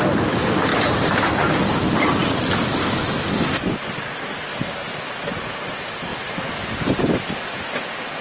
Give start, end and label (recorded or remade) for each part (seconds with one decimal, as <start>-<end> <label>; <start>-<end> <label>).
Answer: 0.0-0.7 recorded; 0.7-1.3 remade; 1.3-2.2 recorded; 2.2-3.6 remade; 3.6-6.1 recorded; 6.1-7.1 remade; 7.1-8.2 recorded